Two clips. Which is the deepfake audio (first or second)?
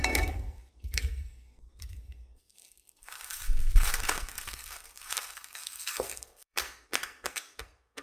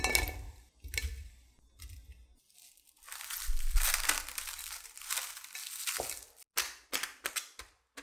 first